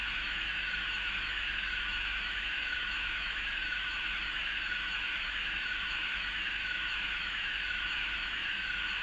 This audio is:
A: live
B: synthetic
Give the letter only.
B